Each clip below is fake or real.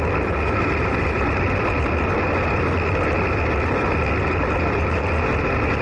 real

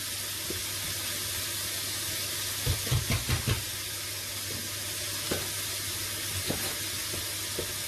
real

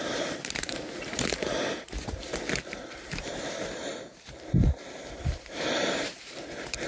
fake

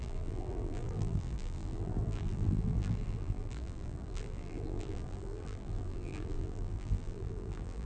fake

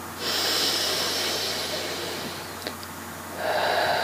real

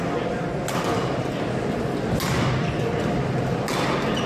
real